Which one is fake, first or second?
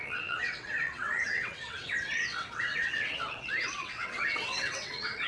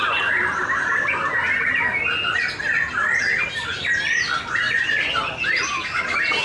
first